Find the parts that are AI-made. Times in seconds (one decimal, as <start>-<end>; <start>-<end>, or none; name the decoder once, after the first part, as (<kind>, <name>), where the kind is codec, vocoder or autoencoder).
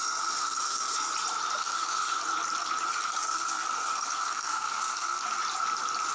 0.0-1.1 (codec, SNAC); 1.6-2.2; 2.9-5.2